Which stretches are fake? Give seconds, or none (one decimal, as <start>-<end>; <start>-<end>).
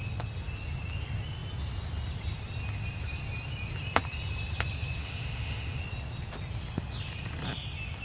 5.0-5.8